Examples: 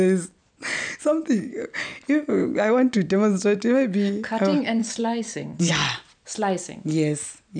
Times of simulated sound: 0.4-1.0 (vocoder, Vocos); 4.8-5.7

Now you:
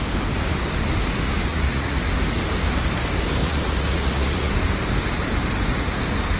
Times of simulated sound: 1.5-2.0 (vocoder, Vocos); 3.4-4.5

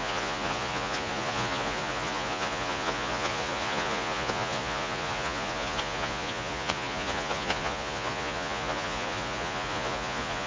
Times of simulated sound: 0.0-10.5 (vocoder, Vocos)

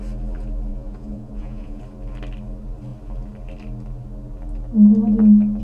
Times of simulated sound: 0.7-1.8 (vocoder, Vocos)

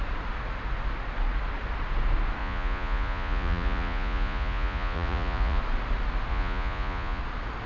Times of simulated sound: 2.4-5.6 (vocoder, Vocos); 6.3-7.2

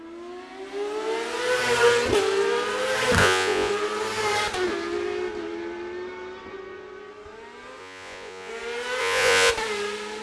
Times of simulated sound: 3.2-3.7 (vocoder, Vocos); 7.8-8.5; 9.0-9.5